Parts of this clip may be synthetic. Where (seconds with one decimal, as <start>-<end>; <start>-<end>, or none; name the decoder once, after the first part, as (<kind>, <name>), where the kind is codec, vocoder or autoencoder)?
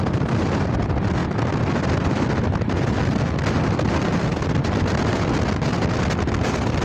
none